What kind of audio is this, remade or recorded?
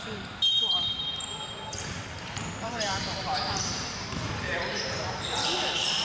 remade